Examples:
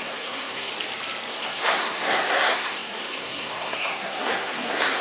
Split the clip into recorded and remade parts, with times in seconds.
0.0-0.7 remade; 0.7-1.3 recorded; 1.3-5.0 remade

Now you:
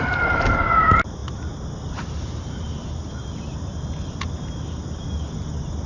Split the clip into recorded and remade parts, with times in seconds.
0.0-5.9 recorded

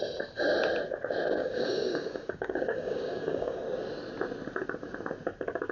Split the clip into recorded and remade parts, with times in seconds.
0.0-1.4 recorded; 1.4-3.6 remade; 3.6-5.7 recorded